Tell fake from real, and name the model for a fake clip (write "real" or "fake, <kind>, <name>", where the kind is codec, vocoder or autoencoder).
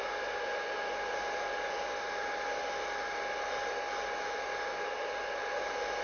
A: real